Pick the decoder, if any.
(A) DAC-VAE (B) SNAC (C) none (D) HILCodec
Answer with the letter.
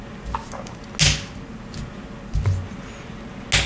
C